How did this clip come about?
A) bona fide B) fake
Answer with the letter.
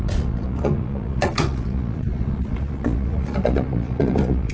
B